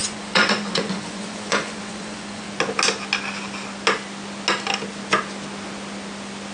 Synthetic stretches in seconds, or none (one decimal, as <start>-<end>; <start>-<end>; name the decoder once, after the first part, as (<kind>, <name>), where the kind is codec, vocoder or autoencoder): 0.0-2.5 (vocoder, Vocos)

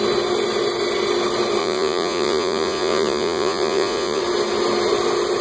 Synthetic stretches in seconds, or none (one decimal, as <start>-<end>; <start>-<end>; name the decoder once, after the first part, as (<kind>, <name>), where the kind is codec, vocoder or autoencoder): 1.6-4.2 (vocoder, Vocos)